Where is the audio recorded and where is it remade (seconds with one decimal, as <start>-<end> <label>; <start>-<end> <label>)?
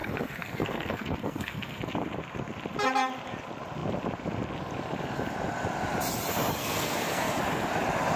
0.0-1.8 remade; 1.8-6.6 recorded; 6.6-7.3 remade; 7.3-8.2 recorded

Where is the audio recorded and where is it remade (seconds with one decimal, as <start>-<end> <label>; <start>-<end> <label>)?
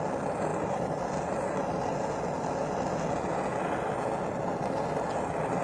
0.0-5.6 recorded